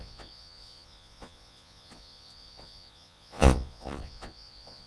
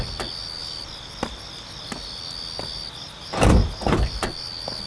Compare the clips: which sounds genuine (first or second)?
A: second